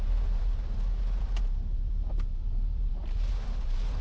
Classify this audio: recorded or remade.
remade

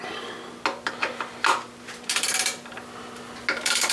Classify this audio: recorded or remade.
recorded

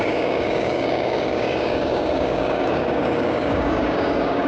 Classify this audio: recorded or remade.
remade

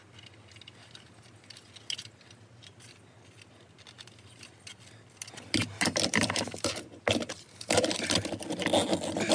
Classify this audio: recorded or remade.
recorded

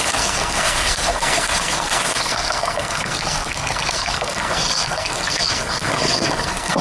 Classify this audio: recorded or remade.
remade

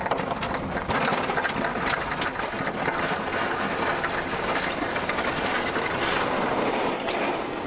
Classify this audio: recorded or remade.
recorded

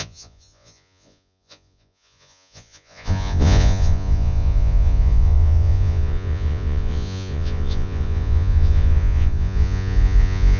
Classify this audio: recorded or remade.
remade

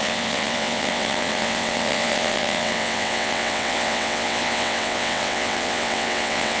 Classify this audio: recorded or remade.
remade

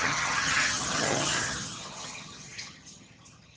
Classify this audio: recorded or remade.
remade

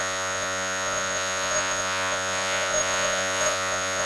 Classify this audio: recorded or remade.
remade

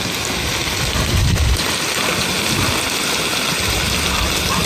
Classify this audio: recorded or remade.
recorded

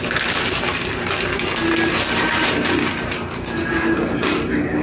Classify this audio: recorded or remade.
recorded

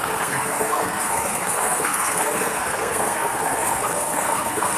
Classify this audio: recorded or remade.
remade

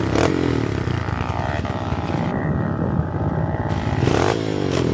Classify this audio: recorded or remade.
remade